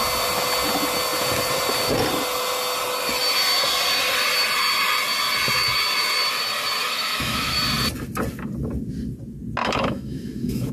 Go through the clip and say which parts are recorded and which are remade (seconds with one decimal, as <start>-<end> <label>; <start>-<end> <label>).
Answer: 0.0-6.8 recorded; 6.8-7.6 remade; 7.6-9.6 recorded; 9.6-10.7 remade

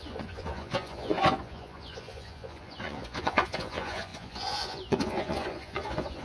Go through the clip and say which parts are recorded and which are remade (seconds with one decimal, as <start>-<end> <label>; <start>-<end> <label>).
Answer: 0.0-6.2 remade